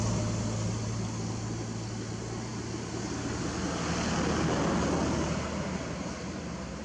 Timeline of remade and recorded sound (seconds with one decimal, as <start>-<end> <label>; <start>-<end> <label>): 0.0-6.8 recorded